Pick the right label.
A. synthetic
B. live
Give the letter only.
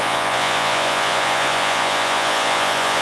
A